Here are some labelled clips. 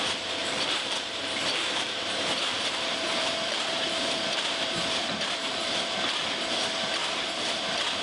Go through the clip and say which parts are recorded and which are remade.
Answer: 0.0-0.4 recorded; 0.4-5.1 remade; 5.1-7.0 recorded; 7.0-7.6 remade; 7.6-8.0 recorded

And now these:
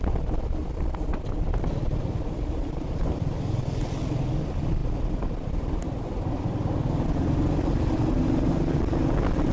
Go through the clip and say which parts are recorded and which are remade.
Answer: 0.0-0.6 recorded; 0.6-1.7 remade; 1.7-9.5 recorded

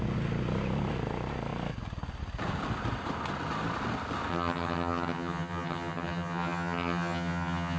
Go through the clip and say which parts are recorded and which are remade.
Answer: 0.0-4.3 recorded; 4.3-7.8 remade

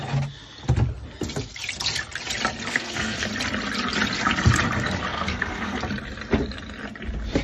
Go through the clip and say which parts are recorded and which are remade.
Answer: 0.0-2.7 recorded; 2.7-3.3 remade; 3.3-5.1 recorded; 5.1-5.8 remade; 5.8-7.4 recorded

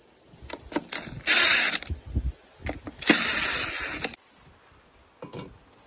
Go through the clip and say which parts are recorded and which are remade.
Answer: 0.0-5.9 recorded

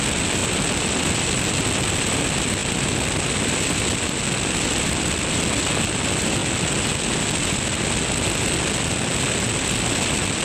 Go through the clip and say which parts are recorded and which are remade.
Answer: 0.0-10.4 recorded

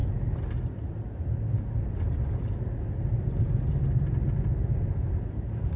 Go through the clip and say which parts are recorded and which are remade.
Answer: 0.0-2.8 recorded; 2.8-3.7 remade; 3.7-4.6 recorded; 4.6-5.8 remade